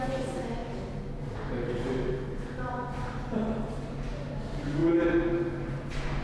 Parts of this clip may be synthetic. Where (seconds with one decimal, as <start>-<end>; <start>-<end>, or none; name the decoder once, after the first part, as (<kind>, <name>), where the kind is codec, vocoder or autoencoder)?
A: none